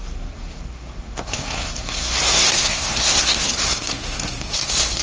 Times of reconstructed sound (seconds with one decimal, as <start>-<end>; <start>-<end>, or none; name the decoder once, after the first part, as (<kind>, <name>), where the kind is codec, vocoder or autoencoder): 0.0-5.0 (codec, SNAC)